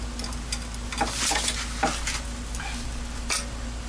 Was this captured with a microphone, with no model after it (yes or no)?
yes